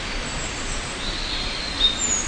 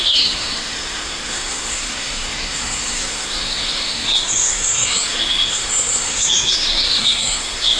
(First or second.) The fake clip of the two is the second